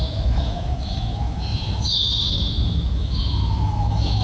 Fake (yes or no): yes